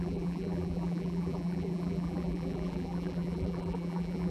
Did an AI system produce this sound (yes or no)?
yes